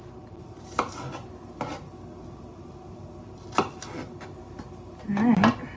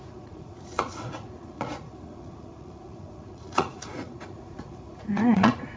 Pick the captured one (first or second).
first